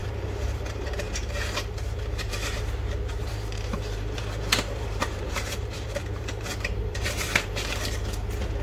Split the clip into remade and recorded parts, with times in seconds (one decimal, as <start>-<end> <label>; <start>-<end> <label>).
0.0-2.6 remade; 2.6-3.2 recorded; 3.2-7.7 remade; 7.7-8.6 recorded